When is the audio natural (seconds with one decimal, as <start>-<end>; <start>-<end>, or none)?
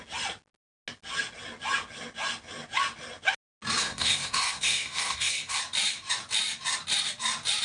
0.0-3.8; 5.6-7.6